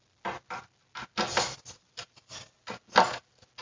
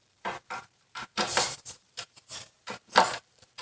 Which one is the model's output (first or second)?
second